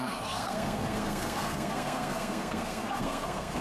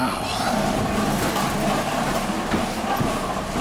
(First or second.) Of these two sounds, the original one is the second